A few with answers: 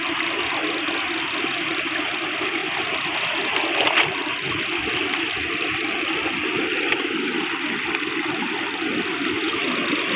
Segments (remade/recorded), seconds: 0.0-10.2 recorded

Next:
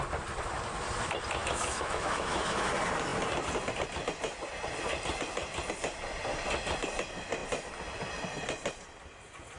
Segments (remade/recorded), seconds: 0.0-1.4 recorded; 1.4-2.7 remade; 2.7-9.6 recorded

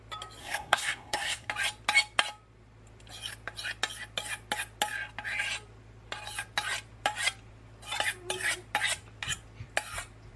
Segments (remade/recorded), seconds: 0.0-0.4 recorded; 0.4-1.5 remade; 1.5-10.4 recorded

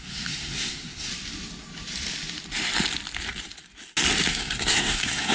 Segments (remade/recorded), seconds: 0.0-1.1 remade; 1.1-4.3 recorded; 4.3-5.3 remade

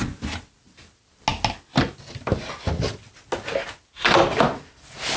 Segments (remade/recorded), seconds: 0.0-5.2 recorded

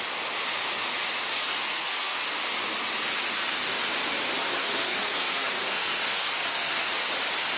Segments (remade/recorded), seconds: 0.0-1.3 recorded; 1.3-2.2 remade; 2.2-4.4 recorded; 4.4-7.1 remade; 7.1-7.6 recorded